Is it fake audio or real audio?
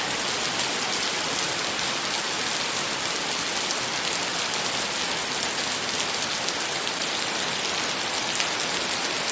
real